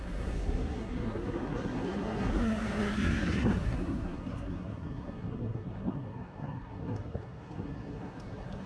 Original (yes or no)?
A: no